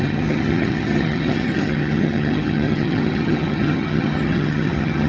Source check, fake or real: fake